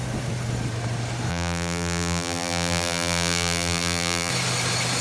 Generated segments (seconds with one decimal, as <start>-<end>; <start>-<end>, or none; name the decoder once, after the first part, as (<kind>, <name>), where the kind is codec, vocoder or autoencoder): 1.3-4.3 (vocoder, BigVGAN v2)